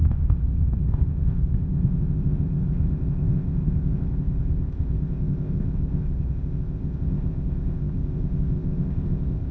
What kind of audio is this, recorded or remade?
remade